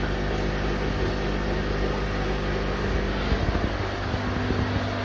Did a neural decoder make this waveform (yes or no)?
no